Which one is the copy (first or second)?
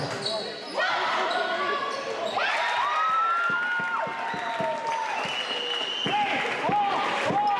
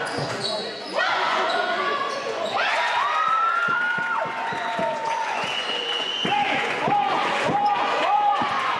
second